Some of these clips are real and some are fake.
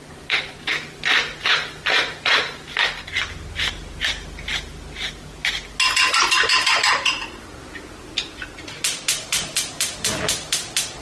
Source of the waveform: real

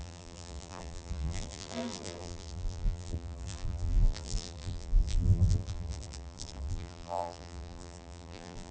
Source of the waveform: fake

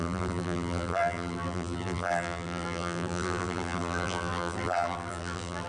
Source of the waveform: fake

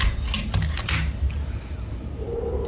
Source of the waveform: real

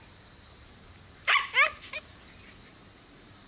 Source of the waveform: fake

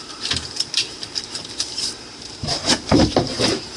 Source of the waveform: fake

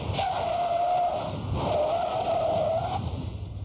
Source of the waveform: fake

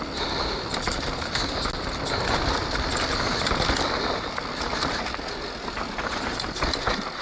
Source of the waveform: real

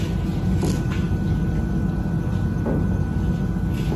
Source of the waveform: real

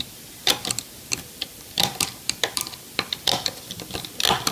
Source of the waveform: fake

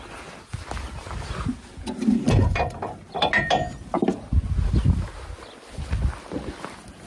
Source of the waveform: real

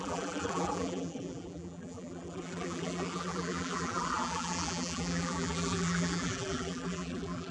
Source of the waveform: fake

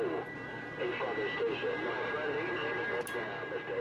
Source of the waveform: real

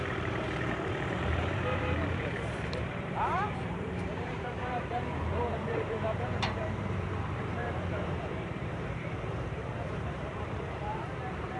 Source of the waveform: fake